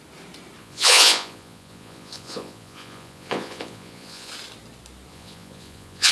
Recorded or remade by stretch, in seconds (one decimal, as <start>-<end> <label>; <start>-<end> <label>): 0.0-0.6 recorded; 0.6-4.3 remade; 4.3-5.1 recorded; 5.1-6.1 remade